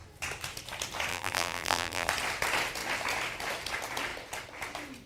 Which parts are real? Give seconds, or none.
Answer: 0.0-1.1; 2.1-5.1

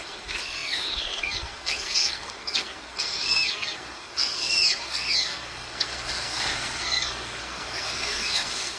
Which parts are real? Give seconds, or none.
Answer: none

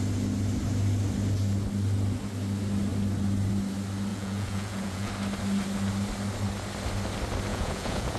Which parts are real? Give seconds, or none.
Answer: 0.0-4.1; 5.1-7.5

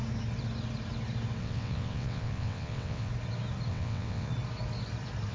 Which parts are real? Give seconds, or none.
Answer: 0.0-1.4; 3.1-3.7; 4.3-5.3

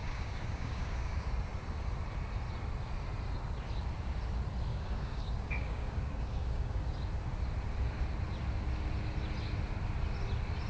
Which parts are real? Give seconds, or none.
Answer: 1.3-4.7; 6.8-10.7

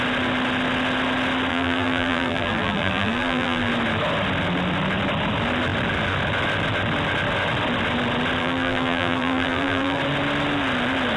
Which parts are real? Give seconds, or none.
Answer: 0.0-1.5; 3.7-8.4; 10.0-11.2

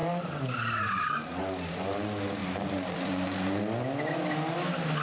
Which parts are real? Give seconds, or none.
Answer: 1.4-2.4; 3.6-5.0

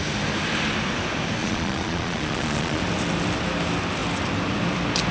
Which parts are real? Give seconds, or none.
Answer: 0.0-1.4; 2.8-5.1